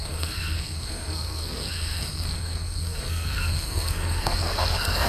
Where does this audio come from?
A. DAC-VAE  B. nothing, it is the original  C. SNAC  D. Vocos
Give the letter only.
C